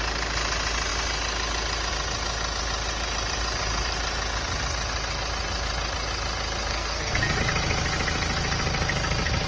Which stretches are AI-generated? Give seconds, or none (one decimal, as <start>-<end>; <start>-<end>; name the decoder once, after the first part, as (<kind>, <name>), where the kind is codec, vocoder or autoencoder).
6.7-7.4 (codec, SNAC)